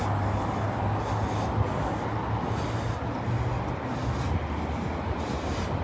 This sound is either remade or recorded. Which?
recorded